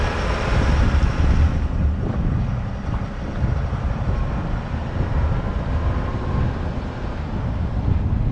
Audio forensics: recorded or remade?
recorded